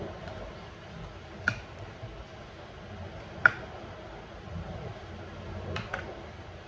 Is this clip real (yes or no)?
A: yes